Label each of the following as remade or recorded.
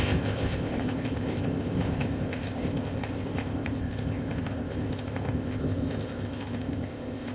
remade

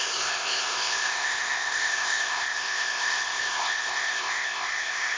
remade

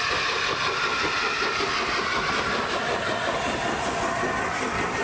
recorded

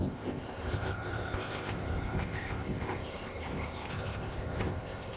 remade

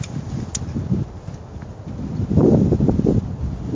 recorded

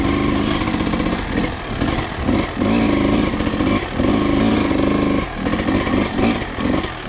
recorded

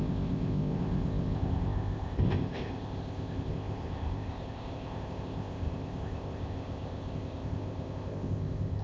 remade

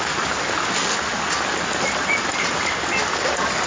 recorded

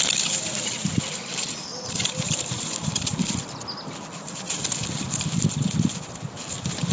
recorded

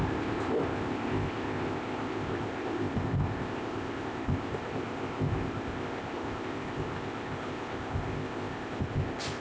remade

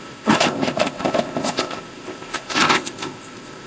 remade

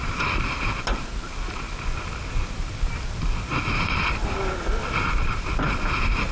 recorded